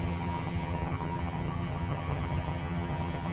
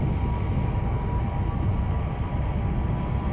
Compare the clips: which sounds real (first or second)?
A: second